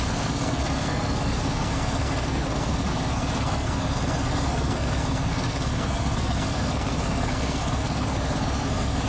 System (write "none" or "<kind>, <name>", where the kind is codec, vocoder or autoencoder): codec, SNAC